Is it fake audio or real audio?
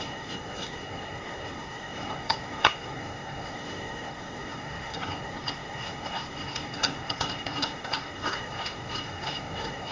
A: fake